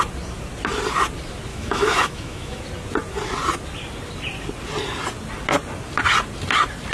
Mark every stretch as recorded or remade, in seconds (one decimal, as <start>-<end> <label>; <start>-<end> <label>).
0.0-1.5 recorded; 1.5-2.6 remade; 2.6-6.9 recorded